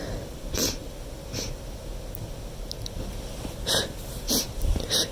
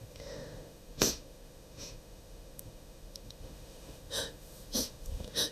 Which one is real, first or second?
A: first